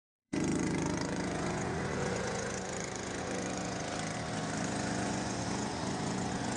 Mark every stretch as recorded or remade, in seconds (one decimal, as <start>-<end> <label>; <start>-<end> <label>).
0.0-3.8 remade; 3.8-4.6 recorded; 4.6-6.6 remade